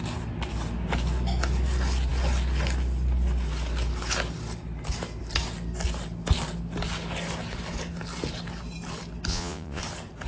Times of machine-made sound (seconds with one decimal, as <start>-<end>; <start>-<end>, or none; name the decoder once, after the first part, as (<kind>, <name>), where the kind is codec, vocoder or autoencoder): 9.3-9.8 (vocoder, Vocos)